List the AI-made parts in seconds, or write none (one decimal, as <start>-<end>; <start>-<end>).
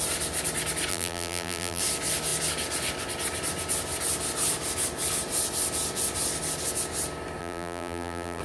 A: 0.9-1.8; 7.4-8.4